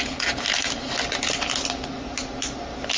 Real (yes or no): yes